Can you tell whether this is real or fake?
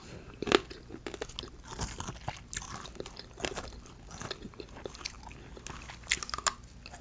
real